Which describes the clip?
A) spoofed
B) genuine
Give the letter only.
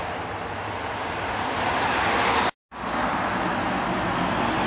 B